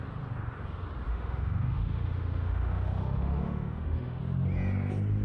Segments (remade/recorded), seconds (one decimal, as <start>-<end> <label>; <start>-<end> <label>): 0.0-1.1 recorded; 1.1-4.2 remade; 4.2-5.2 recorded